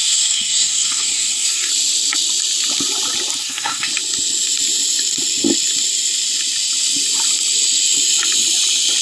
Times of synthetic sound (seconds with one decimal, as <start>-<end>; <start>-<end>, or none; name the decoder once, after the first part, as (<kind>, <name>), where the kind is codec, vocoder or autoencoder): 0.0-1.7 (codec, SNAC); 3.4-3.9